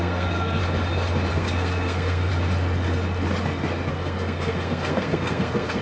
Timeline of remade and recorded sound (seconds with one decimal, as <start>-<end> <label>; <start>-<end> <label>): 0.0-0.6 remade; 0.6-1.3 recorded; 1.3-2.3 remade; 2.3-3.9 recorded; 3.9-5.8 remade